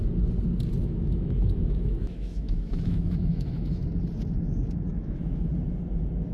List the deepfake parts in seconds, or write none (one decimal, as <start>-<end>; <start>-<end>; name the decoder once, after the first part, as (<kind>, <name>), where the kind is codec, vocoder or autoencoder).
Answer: 0.8-3.8 (autoencoder, DAC-VAE); 4.9-5.5